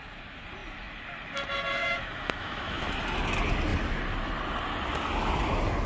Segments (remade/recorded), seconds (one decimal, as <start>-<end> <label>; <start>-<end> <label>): 0.0-1.8 recorded; 1.8-2.9 remade; 2.9-5.9 recorded